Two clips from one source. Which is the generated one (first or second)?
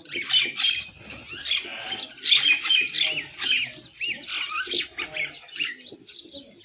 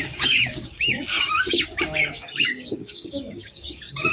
second